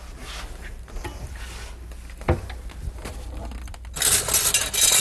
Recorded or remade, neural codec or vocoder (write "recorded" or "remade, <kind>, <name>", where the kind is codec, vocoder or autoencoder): recorded